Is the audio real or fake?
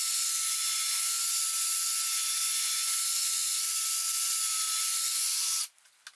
real